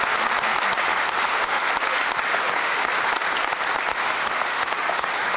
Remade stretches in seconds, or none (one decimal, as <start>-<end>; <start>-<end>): 0.9-1.6; 2.3-2.9; 3.9-5.4